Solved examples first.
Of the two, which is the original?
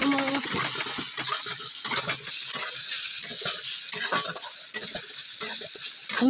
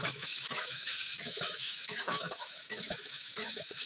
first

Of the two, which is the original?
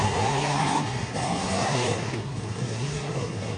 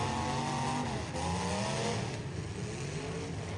second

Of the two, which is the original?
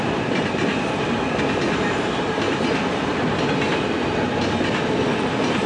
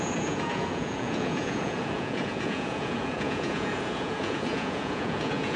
first